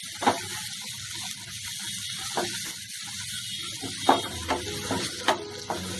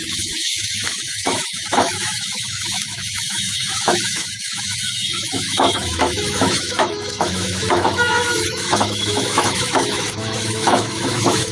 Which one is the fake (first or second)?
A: second